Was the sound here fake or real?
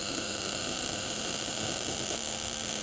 fake